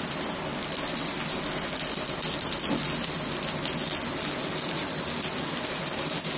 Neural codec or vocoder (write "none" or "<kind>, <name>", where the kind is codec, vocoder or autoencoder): none